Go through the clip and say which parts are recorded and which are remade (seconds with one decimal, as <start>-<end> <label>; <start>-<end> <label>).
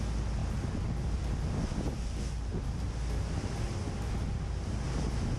0.0-5.4 recorded